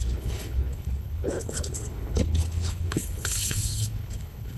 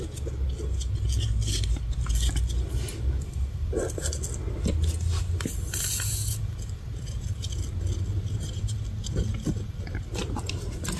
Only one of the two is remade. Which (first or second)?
first